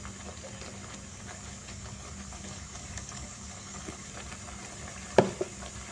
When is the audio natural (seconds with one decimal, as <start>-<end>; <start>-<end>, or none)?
0.0-1.1; 4.1-5.9